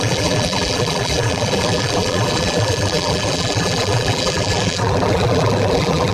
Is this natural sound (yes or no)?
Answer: no